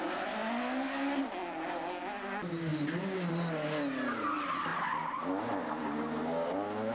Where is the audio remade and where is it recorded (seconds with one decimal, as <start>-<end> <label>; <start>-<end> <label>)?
0.0-2.7 recorded; 2.7-3.3 remade; 3.3-6.9 recorded